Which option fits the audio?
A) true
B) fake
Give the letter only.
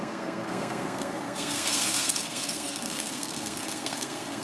B